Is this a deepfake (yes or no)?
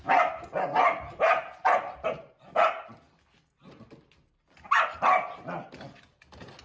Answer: no